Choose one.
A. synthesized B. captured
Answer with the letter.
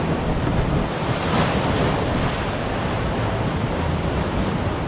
B